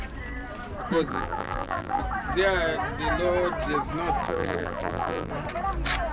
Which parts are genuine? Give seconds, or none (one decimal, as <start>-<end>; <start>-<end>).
0.0-1.1; 2.0-4.2; 5.3-6.1